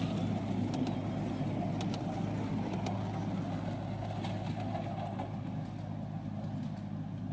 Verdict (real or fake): real